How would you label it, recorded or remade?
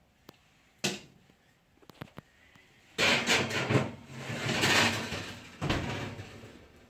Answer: recorded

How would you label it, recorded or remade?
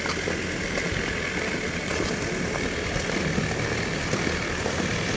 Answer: recorded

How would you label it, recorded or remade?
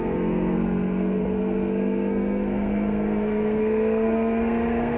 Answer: remade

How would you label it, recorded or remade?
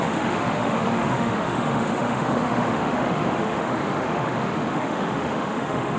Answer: remade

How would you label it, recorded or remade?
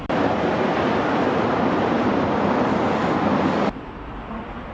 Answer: remade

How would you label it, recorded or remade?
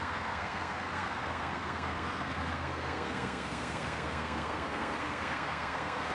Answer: remade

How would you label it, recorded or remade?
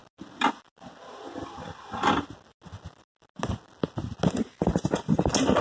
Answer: recorded